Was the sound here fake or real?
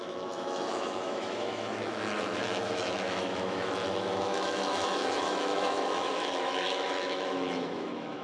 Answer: fake